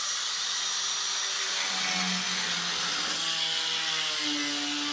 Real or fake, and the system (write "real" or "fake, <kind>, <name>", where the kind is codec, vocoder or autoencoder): real